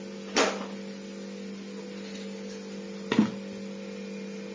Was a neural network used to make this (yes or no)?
no